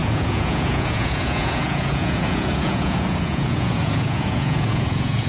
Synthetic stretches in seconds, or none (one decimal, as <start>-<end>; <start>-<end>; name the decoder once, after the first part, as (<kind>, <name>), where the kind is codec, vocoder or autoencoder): 0.0-5.3 (vocoder, Vocos)